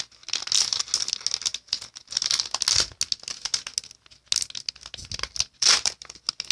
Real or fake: real